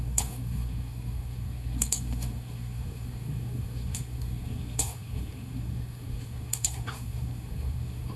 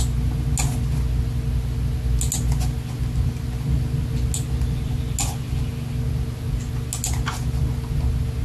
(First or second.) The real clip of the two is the second